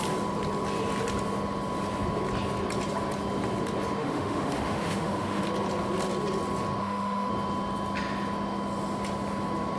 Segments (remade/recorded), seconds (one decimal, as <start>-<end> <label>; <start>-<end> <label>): 0.0-4.0 recorded; 4.0-5.4 remade; 5.4-6.8 recorded; 6.8-7.3 remade; 7.3-9.8 recorded